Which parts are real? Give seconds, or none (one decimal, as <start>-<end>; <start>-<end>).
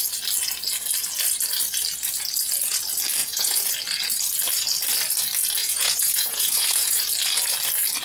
0.0-3.2; 3.7-5.6; 7.0-8.0